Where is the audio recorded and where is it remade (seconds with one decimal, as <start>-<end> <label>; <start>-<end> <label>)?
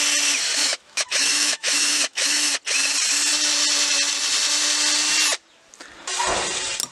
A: 0.0-0.6 recorded; 0.6-2.5 remade; 2.5-6.9 recorded